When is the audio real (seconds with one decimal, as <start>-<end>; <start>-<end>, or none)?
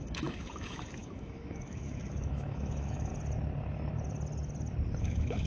3.1-5.0